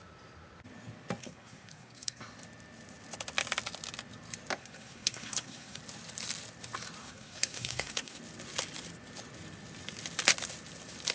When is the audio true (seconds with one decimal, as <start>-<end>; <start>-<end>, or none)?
0.0-1.2; 2.2-4.6; 5.8-7.0; 8.2-11.1